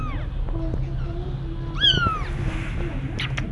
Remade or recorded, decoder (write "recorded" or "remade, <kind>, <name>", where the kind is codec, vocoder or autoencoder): recorded